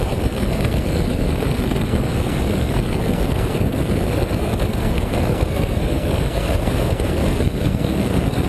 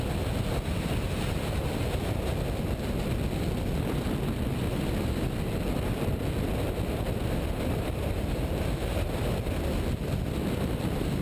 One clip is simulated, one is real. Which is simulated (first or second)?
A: first